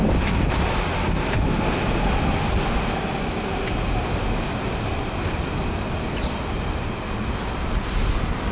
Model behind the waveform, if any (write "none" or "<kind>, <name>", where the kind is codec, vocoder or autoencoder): none